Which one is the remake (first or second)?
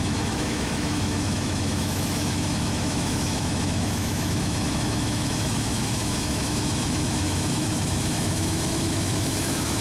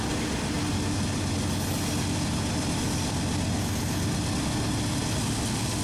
first